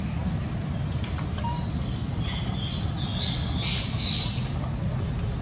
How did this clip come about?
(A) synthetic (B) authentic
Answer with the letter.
B